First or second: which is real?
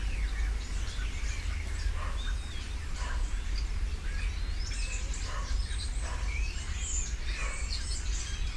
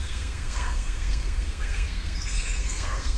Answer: first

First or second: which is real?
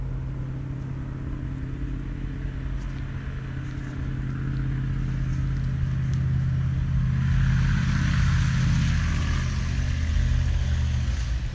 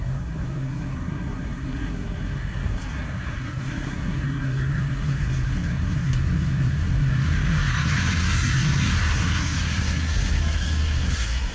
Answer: first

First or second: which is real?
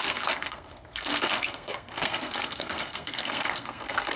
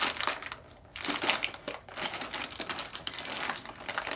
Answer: second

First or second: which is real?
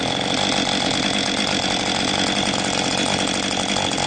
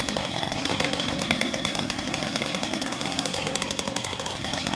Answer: first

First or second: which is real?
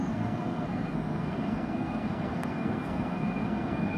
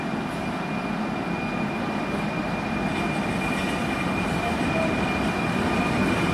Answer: second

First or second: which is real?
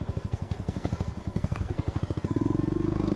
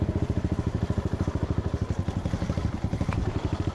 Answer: second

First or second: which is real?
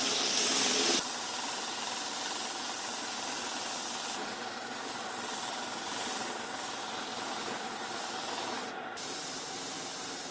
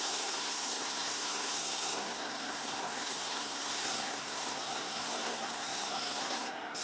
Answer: first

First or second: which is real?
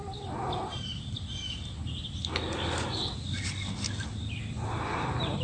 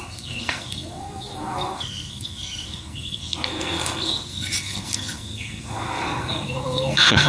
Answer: first